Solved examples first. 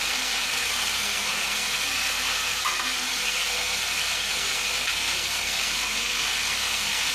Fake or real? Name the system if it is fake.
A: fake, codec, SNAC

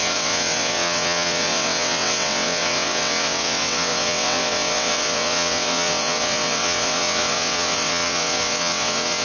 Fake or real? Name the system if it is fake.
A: fake, vocoder, WaveNeXt